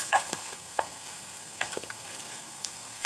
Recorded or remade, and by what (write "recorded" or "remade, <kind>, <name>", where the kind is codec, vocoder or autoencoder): remade, codec, SNAC